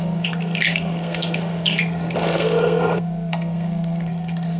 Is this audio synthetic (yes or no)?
yes